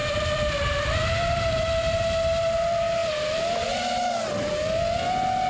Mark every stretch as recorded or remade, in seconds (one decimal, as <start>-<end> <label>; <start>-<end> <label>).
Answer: 0.0-1.2 remade; 1.2-5.5 recorded